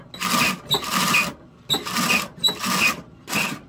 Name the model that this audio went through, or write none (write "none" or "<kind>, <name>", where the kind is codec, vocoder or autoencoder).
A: none